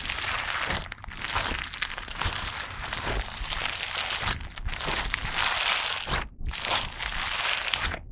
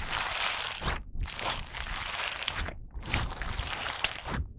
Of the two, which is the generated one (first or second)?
second